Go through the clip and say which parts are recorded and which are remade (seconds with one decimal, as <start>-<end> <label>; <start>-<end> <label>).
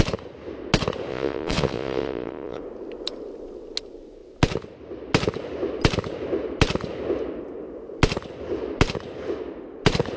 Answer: 0.0-1.1 recorded; 1.1-2.6 remade; 2.6-10.2 recorded